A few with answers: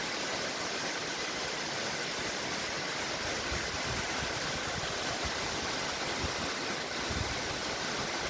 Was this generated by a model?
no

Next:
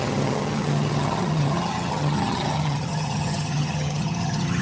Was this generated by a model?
yes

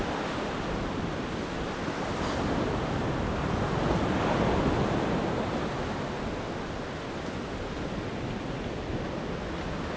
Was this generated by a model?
no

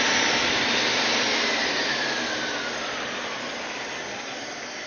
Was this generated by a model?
no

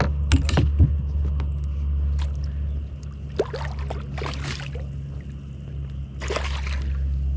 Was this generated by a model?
no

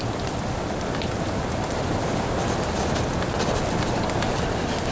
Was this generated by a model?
no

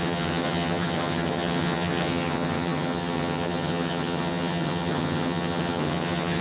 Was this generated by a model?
yes